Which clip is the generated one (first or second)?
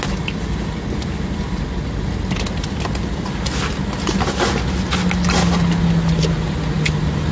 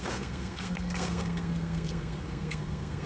second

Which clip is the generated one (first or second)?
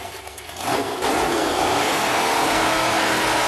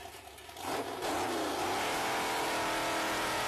first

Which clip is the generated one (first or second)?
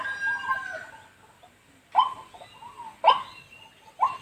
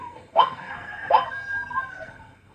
second